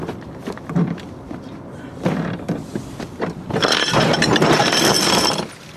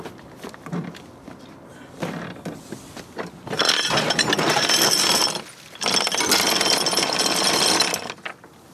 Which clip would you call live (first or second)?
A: second